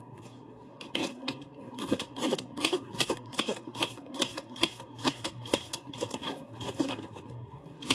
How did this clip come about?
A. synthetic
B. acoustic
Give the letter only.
A